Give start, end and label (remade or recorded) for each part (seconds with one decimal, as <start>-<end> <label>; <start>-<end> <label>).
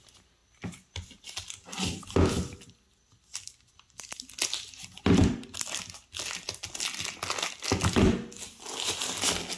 0.0-0.4 recorded; 0.4-4.0 remade; 4.0-9.6 recorded